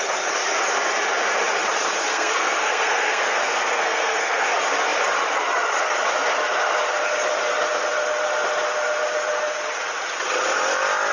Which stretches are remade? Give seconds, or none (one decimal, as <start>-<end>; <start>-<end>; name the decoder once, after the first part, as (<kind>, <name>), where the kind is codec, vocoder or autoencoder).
2.1-4.5 (codec, SNAC)